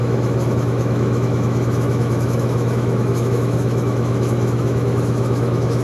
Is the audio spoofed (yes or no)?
yes